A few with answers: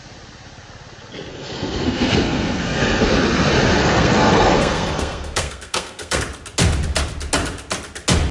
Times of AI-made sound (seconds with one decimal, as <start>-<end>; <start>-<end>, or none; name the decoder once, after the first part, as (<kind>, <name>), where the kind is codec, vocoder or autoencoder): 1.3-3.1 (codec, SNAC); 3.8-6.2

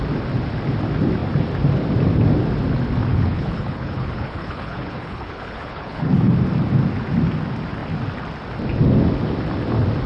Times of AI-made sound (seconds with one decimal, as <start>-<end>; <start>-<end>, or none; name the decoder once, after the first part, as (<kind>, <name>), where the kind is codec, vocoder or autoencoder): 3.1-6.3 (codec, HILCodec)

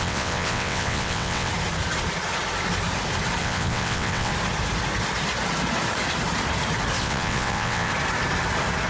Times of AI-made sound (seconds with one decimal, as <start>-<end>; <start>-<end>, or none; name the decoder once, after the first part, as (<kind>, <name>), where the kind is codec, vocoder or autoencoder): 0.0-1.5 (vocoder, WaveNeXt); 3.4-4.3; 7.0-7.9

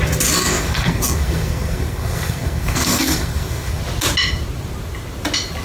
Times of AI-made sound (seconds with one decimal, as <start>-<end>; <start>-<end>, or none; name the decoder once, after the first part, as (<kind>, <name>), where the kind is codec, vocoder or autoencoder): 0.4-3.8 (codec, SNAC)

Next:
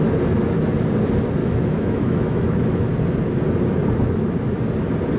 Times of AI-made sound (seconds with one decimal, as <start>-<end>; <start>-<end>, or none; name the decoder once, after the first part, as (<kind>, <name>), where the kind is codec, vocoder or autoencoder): 1.4-2.9 (autoencoder, DAC-VAE)